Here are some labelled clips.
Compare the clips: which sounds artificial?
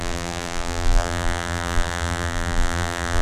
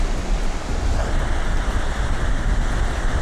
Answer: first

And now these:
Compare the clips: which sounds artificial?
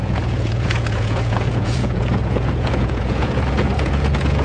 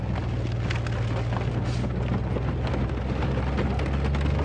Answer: first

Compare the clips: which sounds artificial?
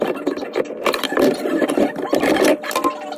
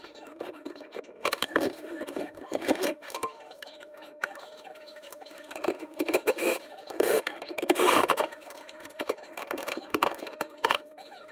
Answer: second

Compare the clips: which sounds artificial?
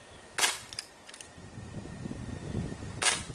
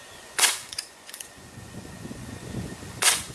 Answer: second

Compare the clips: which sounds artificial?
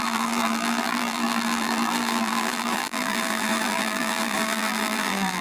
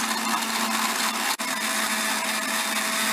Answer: first